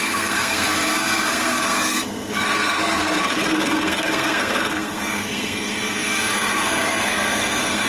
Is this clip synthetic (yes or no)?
yes